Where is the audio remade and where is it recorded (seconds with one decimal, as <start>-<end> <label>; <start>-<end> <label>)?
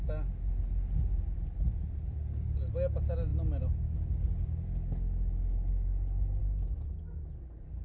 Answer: 0.0-7.8 recorded